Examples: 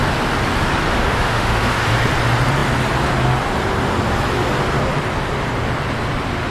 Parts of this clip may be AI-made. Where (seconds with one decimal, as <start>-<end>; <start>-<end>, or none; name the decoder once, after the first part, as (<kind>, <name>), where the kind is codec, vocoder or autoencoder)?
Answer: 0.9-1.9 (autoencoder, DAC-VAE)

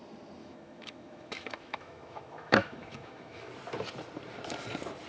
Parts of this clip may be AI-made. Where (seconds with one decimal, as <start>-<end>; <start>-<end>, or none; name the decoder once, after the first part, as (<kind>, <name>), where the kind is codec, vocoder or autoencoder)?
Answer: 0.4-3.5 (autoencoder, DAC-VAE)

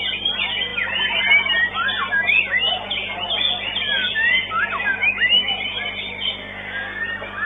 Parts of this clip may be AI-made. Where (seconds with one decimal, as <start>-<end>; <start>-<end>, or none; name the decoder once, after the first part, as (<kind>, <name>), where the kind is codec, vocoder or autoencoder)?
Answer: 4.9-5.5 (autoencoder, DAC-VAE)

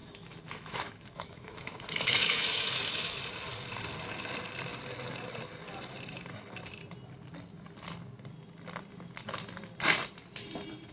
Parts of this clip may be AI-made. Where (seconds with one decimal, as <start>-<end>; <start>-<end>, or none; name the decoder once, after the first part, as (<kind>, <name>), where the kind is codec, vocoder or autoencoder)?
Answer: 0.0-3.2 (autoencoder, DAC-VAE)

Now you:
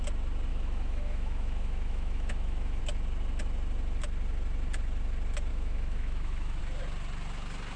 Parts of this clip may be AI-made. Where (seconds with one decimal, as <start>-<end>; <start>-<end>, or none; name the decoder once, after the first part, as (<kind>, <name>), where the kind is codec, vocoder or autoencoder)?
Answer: 0.5-2.8 (autoencoder, DAC-VAE); 5.5-6.6

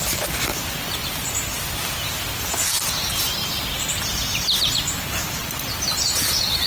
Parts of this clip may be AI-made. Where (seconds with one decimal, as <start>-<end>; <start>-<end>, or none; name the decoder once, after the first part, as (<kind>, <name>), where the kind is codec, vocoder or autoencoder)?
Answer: none

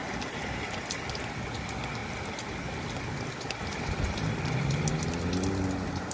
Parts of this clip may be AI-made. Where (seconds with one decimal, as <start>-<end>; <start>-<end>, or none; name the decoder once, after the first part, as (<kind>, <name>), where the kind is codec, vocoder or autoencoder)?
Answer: none